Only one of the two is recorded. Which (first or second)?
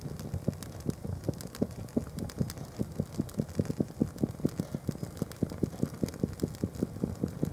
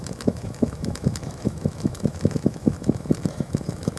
first